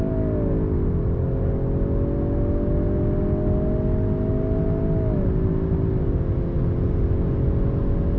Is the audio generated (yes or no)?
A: no